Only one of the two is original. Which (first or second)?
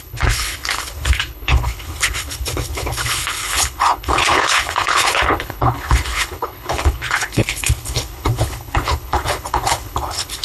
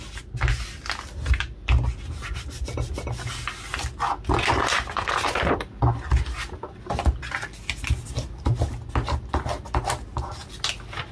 second